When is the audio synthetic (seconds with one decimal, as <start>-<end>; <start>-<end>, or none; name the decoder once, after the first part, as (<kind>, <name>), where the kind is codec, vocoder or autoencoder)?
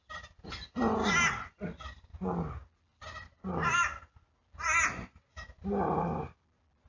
none